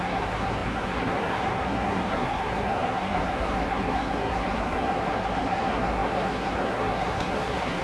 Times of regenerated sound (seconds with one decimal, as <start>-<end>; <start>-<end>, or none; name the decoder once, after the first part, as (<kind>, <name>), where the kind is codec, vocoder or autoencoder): 0.0-7.8 (codec, SNAC)